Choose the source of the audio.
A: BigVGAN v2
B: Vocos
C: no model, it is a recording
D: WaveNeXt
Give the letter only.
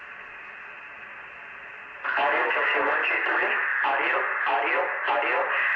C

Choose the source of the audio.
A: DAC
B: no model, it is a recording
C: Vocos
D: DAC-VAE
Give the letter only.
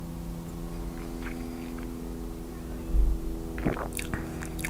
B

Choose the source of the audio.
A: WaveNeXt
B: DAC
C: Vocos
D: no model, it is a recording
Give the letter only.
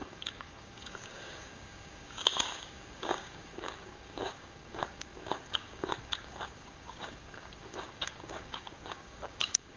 B